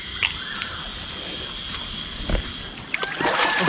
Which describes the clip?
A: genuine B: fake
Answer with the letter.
A